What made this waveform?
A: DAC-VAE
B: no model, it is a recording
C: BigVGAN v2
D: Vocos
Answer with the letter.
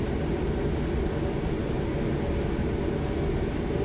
B